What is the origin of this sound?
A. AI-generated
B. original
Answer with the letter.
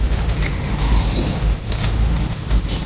A